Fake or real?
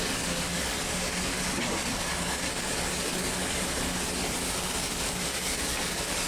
fake